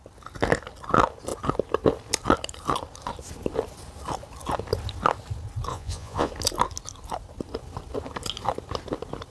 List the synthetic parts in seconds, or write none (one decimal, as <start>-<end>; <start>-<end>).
5.7-6.3